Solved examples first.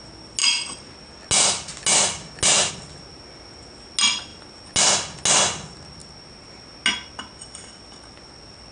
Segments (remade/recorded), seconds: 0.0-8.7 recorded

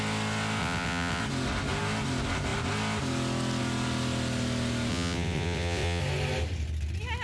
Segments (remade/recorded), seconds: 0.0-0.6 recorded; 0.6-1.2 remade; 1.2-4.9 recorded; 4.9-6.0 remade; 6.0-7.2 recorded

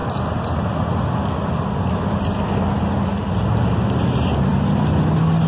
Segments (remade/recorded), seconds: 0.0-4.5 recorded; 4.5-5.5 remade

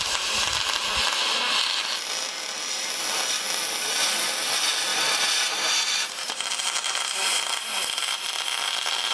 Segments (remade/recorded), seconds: 0.0-4.0 recorded; 4.0-4.5 remade; 4.5-4.9 recorded; 4.9-7.0 remade; 7.0-9.1 recorded

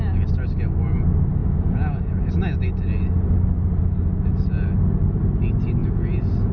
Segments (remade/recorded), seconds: 0.0-1.4 recorded; 1.4-2.3 remade; 2.3-5.8 recorded; 5.8-6.5 remade